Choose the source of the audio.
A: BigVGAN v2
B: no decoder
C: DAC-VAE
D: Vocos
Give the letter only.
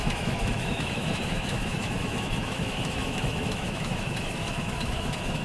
C